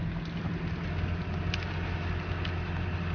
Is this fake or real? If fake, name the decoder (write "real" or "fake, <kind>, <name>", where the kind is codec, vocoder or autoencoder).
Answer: real